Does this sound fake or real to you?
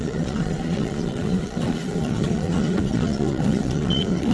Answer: fake